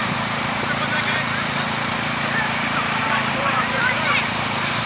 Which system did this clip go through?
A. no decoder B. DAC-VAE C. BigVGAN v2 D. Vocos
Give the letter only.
C